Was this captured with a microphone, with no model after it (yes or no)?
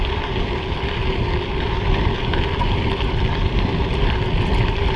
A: yes